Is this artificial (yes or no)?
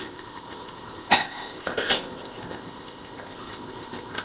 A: yes